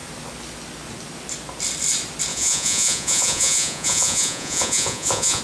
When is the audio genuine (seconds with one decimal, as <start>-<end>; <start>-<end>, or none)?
0.0-2.3